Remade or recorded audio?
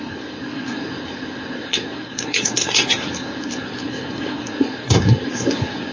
remade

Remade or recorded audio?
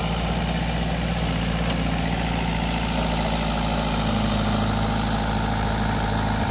recorded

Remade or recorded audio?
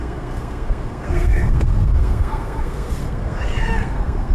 remade